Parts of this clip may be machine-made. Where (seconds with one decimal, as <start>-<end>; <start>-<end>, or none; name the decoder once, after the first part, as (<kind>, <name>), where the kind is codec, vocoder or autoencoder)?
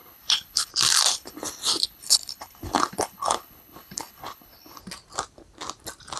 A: 0.0-0.7 (codec, HILCodec); 1.1-4.8